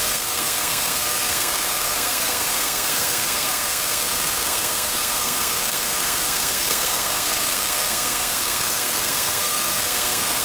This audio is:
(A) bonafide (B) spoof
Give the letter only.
B